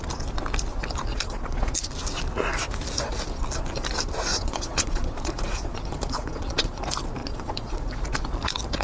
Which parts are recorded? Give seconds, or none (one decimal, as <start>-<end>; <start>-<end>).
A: 0.0-1.1; 1.7-4.3; 6.8-7.2; 7.9-8.8